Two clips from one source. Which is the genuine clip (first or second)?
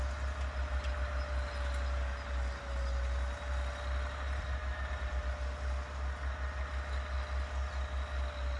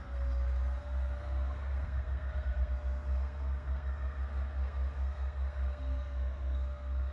first